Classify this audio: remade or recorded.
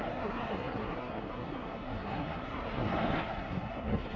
remade